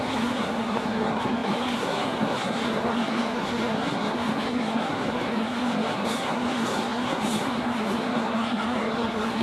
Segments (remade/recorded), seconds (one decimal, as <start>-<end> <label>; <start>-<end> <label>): 0.0-9.4 remade